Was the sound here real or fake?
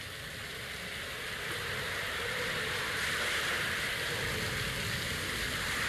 real